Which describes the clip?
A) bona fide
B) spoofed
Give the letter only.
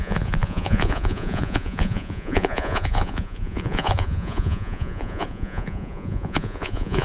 B